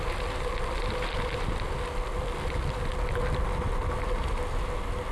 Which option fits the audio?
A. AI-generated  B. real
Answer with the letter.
B